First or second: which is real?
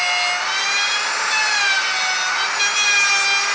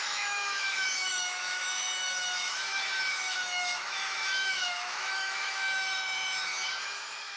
first